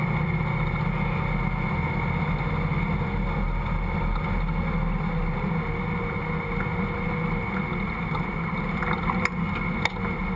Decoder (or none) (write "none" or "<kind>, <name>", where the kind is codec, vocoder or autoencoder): none